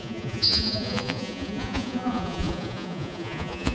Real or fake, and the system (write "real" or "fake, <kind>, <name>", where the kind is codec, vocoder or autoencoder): fake, vocoder, Vocos